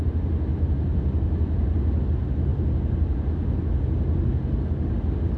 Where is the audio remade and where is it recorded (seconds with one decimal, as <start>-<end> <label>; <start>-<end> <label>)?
0.0-5.4 recorded